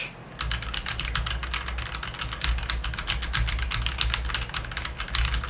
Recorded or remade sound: recorded